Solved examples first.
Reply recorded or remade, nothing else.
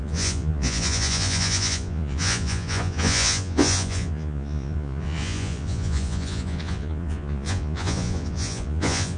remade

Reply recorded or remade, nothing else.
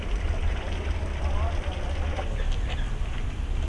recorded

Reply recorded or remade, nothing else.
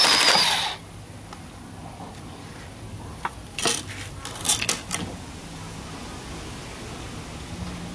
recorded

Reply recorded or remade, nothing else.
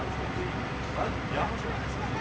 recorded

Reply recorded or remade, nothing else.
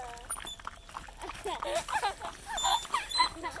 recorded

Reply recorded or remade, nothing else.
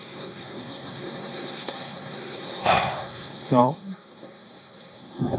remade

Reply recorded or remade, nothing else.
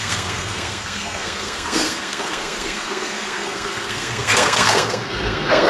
remade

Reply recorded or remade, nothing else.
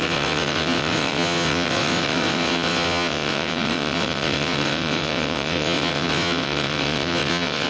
remade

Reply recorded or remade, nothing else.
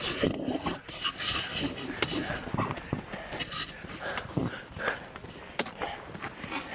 recorded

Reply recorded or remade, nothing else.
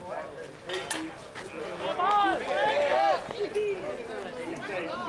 recorded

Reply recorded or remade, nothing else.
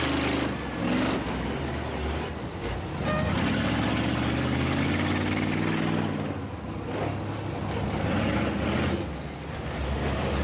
recorded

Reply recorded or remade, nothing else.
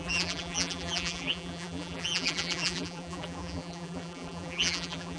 remade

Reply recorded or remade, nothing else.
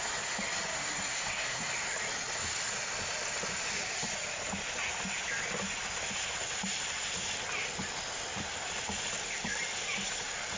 recorded